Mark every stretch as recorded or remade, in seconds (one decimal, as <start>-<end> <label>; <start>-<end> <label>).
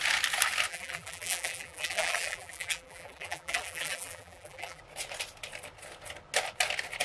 0.0-0.7 recorded; 0.7-4.8 remade; 4.8-7.0 recorded